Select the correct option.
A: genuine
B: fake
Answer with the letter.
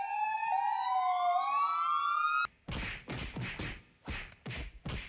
A